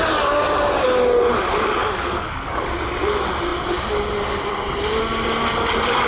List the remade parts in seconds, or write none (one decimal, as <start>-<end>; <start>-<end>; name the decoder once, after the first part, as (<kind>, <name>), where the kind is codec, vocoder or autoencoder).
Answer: 1.8-2.7 (codec, DAC)